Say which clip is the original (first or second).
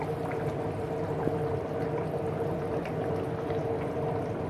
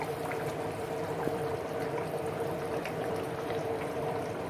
first